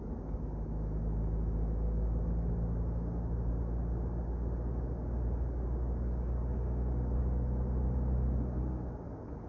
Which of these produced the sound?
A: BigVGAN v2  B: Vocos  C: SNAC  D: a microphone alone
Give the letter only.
D